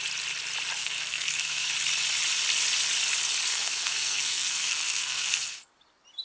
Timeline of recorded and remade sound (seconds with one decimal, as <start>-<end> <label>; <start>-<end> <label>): 0.0-0.8 recorded; 0.8-1.7 remade; 1.7-3.5 recorded; 3.5-5.7 remade; 5.7-6.2 recorded